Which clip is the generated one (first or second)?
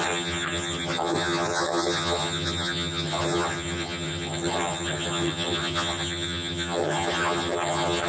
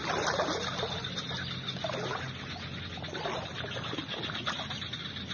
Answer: first